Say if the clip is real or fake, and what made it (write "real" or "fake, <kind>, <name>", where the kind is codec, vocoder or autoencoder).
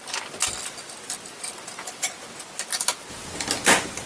real